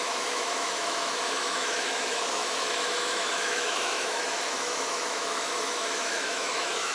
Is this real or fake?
fake